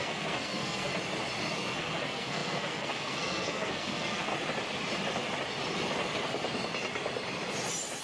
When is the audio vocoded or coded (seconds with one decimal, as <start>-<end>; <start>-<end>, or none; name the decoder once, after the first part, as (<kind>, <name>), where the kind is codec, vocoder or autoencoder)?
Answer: 0.0-0.9 (codec, SNAC); 1.5-4.3